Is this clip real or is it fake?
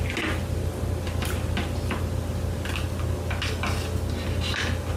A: real